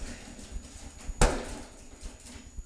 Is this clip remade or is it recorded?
recorded